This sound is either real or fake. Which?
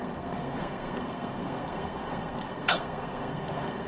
fake